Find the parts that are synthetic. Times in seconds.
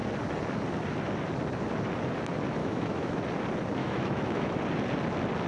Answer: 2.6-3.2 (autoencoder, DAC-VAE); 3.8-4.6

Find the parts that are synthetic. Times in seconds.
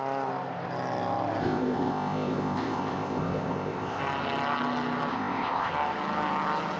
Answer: 1.4-4.0 (codec, ZipCodec); 5.1-5.7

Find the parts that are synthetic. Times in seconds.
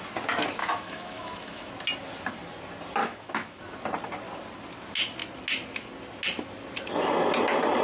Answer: 0.6-1.7 (autoencoder, DAC-VAE); 3.0-3.6